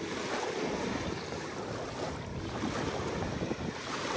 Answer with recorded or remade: recorded